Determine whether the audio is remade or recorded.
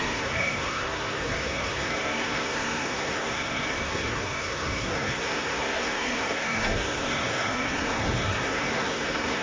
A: remade